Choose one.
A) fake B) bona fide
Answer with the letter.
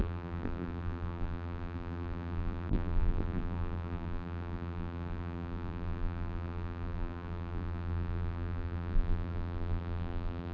A